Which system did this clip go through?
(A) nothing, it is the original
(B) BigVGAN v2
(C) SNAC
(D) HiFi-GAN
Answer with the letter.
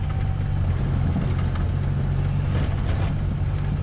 A